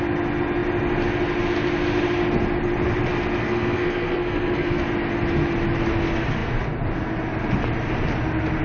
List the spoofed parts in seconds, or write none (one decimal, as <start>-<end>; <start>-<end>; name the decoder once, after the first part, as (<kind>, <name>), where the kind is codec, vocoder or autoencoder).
3.4-4.8 (codec, SNAC)